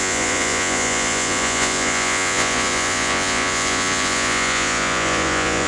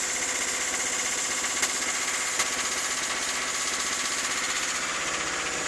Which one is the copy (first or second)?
first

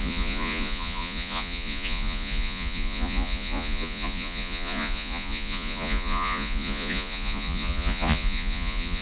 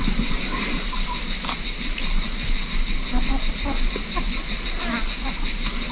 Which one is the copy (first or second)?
first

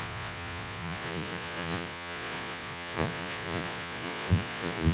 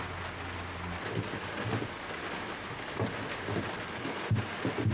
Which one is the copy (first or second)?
first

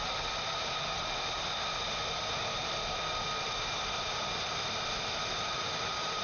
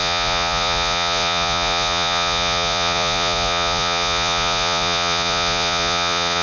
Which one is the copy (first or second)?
second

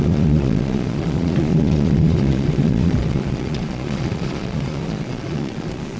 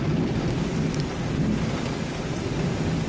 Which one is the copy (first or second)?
first